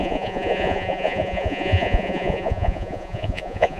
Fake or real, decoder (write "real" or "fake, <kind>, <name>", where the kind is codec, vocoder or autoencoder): fake, vocoder, Vocos